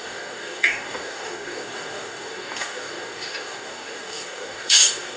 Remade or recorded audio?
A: remade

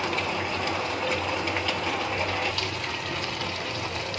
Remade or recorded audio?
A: recorded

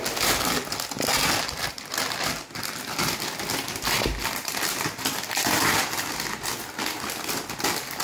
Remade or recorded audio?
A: recorded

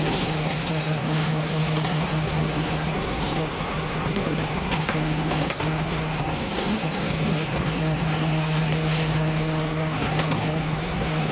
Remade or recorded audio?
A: remade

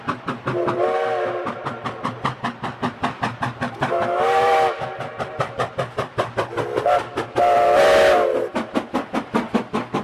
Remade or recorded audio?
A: remade